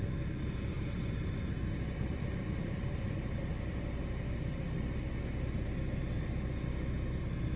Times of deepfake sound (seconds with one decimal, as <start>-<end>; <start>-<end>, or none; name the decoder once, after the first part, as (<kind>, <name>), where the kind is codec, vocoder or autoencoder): 0.7-4.0 (vocoder, BigVGAN v2)